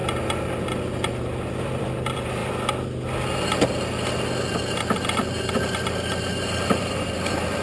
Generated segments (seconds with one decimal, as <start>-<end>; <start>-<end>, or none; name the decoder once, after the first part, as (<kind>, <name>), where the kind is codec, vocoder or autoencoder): 1.5-2.4 (vocoder, BigVGAN v2); 6.4-7.6